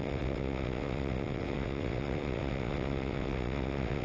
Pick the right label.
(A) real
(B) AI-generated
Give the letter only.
B